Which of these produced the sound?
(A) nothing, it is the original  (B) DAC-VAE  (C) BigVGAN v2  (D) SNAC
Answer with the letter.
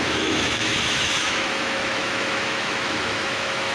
B